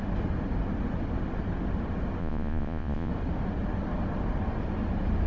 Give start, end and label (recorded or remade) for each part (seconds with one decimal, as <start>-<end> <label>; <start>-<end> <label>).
0.0-2.2 recorded; 2.2-3.1 remade; 3.1-5.3 recorded

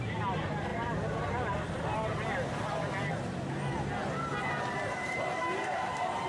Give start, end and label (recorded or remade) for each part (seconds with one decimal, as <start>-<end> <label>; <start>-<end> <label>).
0.0-4.3 recorded; 4.3-6.3 remade